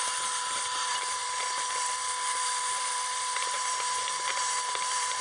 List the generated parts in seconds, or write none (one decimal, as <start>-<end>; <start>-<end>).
0.0-5.2